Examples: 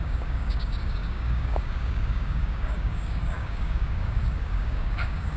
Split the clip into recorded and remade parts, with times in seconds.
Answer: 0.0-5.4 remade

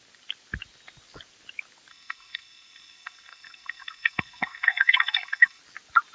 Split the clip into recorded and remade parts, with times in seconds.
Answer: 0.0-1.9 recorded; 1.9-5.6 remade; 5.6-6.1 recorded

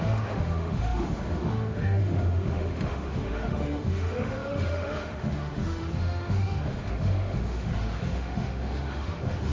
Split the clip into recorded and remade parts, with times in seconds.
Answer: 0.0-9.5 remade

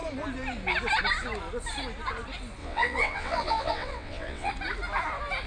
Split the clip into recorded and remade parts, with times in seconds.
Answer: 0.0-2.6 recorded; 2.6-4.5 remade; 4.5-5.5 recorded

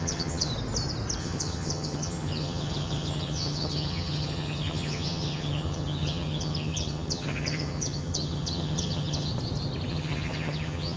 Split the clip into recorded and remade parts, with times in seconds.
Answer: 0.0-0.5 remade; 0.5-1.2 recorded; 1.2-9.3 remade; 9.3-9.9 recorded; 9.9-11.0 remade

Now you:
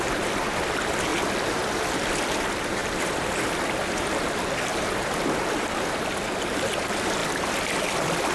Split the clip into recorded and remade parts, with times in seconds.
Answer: 0.0-1.1 remade; 1.1-2.0 recorded; 2.0-2.8 remade; 2.8-3.8 recorded; 3.8-7.2 remade; 7.2-7.7 recorded; 7.7-8.3 remade

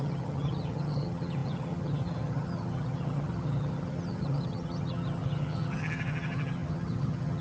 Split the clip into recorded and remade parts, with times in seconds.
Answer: 0.0-7.4 remade

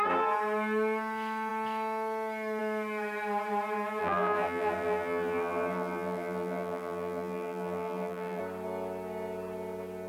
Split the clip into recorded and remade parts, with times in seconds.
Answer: 0.0-4.0 recorded; 4.0-8.4 remade; 8.4-10.1 recorded